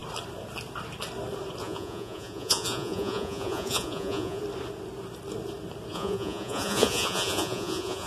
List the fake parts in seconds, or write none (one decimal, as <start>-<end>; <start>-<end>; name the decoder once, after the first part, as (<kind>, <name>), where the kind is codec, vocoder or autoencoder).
1.6-4.4 (vocoder, Vocos); 5.9-8.1